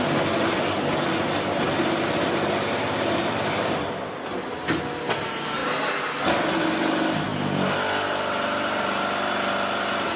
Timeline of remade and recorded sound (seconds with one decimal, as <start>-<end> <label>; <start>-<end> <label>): 0.0-10.2 recorded